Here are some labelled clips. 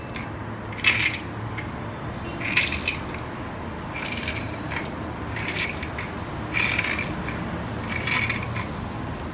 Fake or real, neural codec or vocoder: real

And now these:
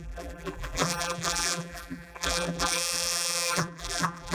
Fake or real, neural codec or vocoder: fake, vocoder, BigVGAN v2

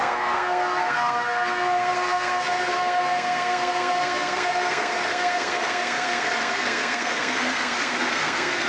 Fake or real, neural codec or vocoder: fake, codec, SNAC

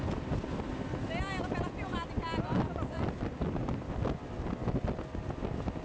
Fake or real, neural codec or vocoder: real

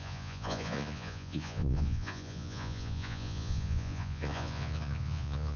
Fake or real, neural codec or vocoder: fake, vocoder, Vocos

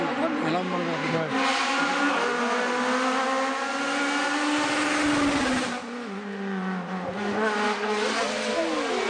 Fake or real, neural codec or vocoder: real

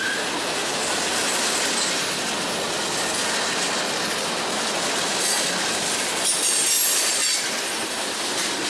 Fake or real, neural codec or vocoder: real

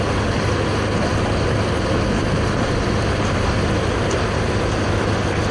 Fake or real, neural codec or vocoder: real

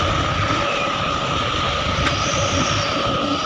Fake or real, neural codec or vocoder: real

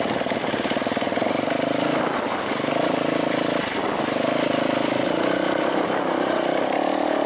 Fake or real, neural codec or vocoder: real